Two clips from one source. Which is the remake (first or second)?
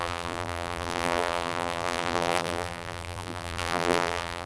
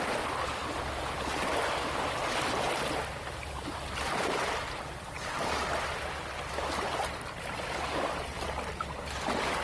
first